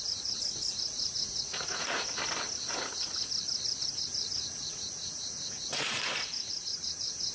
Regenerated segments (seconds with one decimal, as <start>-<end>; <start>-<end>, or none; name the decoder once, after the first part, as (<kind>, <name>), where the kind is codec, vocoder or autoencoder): 0.0-2.2 (vocoder, Vocos); 2.7-3.2; 3.9-7.3